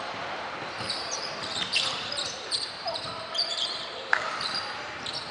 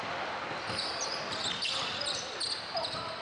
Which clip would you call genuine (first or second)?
second